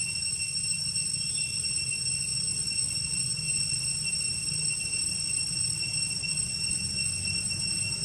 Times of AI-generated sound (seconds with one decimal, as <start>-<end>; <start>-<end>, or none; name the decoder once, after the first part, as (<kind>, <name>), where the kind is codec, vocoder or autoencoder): none